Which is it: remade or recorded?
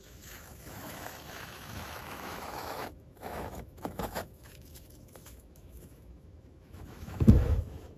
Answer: remade